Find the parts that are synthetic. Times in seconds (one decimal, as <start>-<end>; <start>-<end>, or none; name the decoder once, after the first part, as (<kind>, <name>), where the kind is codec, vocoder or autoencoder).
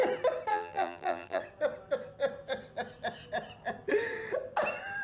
0.5-1.4 (vocoder, BigVGAN v2)